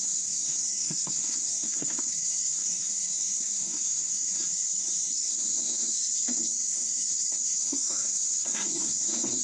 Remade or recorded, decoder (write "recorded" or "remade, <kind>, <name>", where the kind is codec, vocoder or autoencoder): remade, codec, SNAC